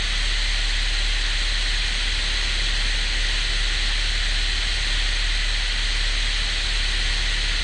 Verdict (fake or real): real